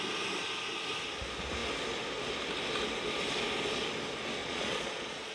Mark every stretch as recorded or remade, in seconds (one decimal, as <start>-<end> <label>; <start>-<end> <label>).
0.0-4.4 recorded; 4.4-5.3 remade